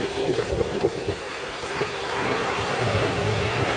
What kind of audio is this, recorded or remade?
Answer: remade